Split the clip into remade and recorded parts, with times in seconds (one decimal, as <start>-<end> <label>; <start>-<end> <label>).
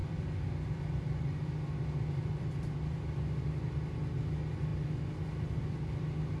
0.0-3.2 remade; 3.2-4.7 recorded; 4.7-6.4 remade